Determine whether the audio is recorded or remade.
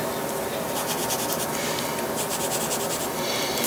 recorded